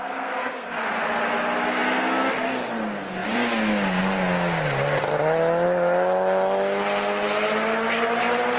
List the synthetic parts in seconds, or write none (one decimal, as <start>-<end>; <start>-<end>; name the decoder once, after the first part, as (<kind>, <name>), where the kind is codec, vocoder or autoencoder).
0.0-0.9 (codec, SNAC)